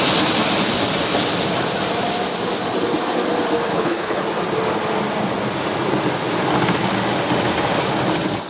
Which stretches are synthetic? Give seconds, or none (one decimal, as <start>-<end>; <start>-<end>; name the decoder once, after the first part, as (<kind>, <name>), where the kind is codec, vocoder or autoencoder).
3.7-4.2 (codec, HILCodec)

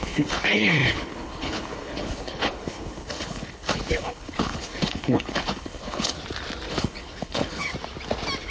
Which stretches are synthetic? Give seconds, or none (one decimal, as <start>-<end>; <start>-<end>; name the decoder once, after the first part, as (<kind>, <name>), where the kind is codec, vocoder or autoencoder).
0.0-6.2 (codec, HILCodec); 6.7-7.7

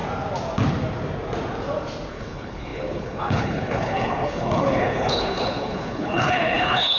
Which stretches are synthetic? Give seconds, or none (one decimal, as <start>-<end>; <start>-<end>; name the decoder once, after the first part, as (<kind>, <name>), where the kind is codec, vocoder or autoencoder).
2.1-7.0 (codec, HILCodec)

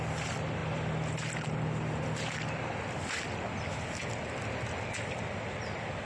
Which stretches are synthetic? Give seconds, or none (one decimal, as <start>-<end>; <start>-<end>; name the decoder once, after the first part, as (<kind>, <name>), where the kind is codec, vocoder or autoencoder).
none